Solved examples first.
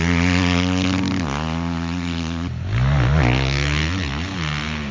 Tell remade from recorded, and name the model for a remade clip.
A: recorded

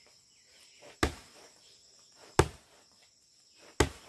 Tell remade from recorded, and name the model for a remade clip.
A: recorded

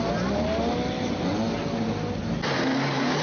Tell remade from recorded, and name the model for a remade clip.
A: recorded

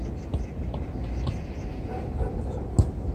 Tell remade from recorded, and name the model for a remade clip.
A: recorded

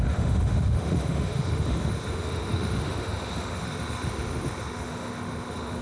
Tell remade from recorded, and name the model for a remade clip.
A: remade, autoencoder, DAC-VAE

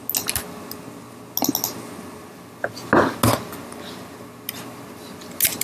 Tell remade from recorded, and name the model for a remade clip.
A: recorded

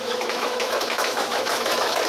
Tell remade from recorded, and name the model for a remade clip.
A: remade, autoencoder, DAC-VAE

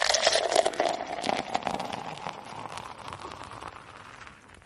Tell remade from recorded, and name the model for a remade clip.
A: recorded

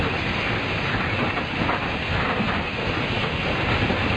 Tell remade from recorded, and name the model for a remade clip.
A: recorded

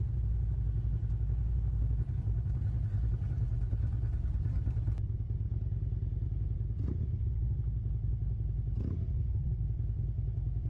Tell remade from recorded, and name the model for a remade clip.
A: recorded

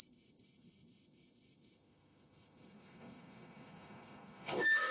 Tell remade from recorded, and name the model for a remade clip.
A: remade, autoencoder, DAC-VAE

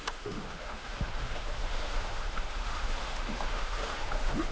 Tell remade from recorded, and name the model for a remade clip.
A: remade, autoencoder, DAC-VAE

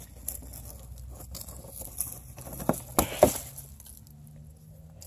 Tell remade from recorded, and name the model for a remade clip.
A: recorded